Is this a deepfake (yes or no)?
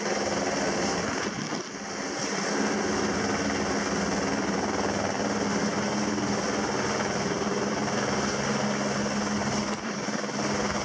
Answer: no